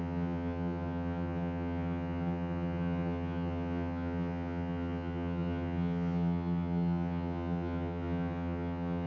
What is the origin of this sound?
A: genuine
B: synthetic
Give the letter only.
B